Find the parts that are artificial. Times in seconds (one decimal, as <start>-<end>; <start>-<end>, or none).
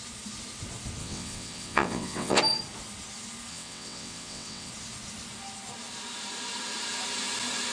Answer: 1.0-2.4; 3.5-4.7